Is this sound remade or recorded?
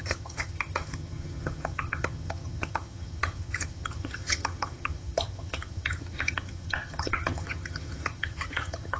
remade